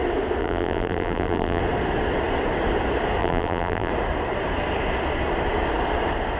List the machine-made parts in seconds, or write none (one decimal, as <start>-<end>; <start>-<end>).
0.4-1.6; 3.2-3.9

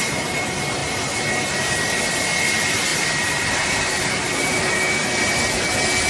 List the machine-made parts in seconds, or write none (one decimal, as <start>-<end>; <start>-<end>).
2.9-4.8

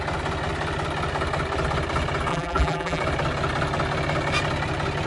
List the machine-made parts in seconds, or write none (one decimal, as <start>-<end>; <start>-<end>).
2.3-3.0

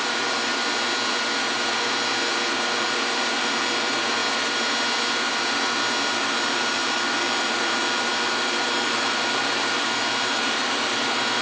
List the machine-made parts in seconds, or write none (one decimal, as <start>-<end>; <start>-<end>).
0.0-0.5; 2.5-4.2; 6.1-11.4

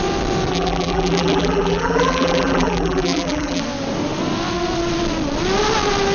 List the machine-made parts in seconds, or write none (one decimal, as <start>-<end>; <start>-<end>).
0.5-3.6

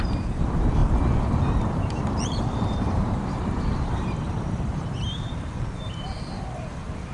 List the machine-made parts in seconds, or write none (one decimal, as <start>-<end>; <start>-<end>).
0.0-7.1

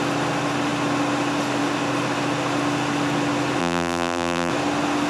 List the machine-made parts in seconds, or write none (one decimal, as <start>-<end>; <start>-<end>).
3.6-4.5

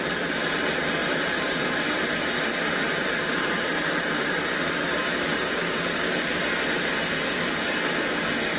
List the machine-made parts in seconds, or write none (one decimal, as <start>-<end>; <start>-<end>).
1.0-4.4; 5.6-6.2